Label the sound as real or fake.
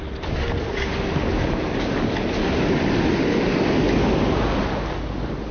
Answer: real